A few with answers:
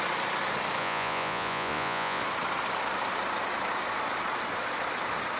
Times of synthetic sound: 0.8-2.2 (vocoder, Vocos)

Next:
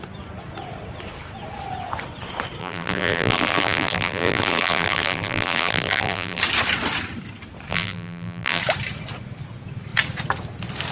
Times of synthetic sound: 2.6-6.4 (vocoder, BigVGAN v2); 7.7-8.6